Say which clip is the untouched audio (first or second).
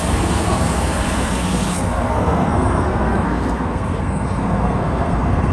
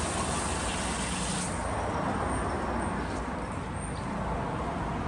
second